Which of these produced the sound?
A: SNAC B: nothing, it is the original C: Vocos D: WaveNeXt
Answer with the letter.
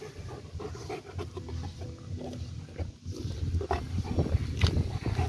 B